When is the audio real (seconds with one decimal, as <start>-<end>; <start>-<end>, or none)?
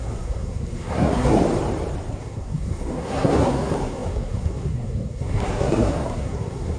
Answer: 1.4-2.2